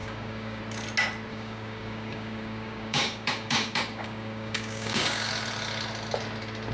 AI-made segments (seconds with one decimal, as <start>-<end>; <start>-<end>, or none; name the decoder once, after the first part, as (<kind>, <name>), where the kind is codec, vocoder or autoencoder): 0.0-0.6 (codec, DAC); 1.3-5.3